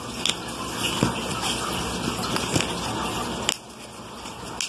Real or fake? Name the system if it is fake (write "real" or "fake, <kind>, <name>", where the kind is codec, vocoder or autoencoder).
real